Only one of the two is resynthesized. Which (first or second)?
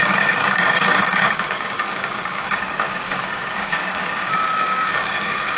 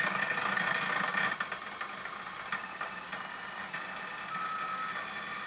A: first